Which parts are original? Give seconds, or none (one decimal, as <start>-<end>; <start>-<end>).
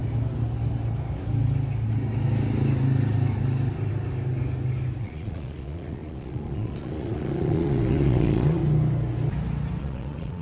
0.0-5.0; 8.6-9.8